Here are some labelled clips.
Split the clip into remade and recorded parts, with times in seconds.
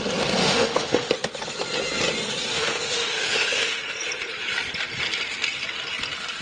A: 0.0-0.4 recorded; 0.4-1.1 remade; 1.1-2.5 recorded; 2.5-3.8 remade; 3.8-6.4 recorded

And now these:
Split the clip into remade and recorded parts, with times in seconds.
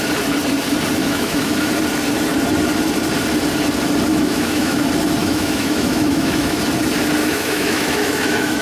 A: 0.0-1.0 recorded; 1.0-1.7 remade; 1.7-4.1 recorded; 4.1-4.8 remade; 4.8-5.2 recorded; 5.2-6.6 remade; 6.6-7.2 recorded; 7.2-8.6 remade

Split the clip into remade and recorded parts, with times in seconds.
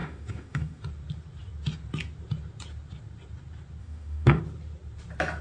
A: 0.0-0.8 remade; 0.8-3.8 recorded; 3.8-4.4 remade; 4.4-5.4 recorded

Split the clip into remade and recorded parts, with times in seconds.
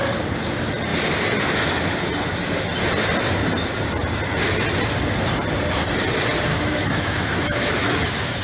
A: 0.0-6.5 recorded; 6.5-8.4 remade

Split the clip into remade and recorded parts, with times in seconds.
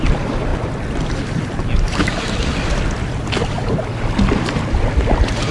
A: 0.0-5.5 recorded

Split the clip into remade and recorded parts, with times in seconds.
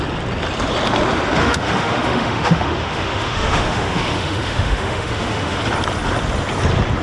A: 0.0-1.4 recorded; 1.4-5.6 remade; 5.6-7.0 recorded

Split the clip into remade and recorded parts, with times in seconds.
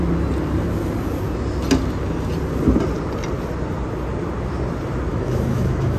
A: 0.0-5.1 recorded; 5.1-6.0 remade